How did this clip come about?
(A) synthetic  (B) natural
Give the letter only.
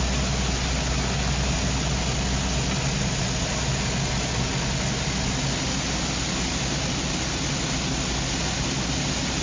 B